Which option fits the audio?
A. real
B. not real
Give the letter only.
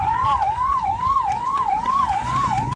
B